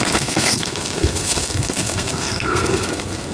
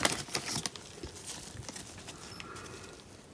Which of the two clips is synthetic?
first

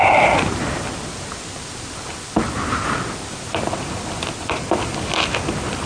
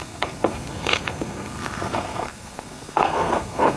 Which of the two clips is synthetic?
second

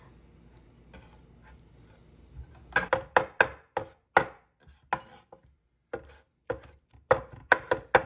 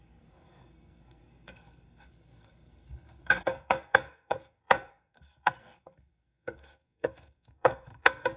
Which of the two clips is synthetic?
second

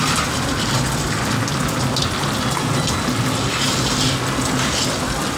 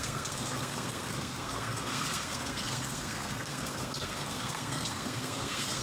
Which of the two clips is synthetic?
second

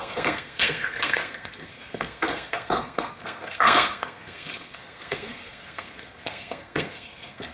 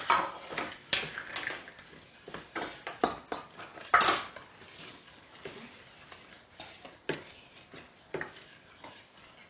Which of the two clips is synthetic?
first